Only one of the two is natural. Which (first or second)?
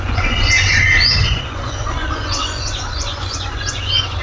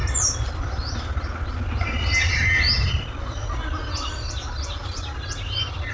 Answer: second